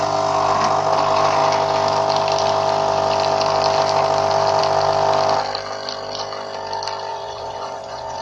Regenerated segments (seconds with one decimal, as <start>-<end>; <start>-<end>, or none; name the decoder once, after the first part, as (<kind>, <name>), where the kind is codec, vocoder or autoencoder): 7.1-8.2 (vocoder, Vocos)